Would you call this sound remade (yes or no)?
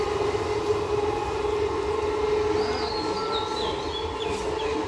no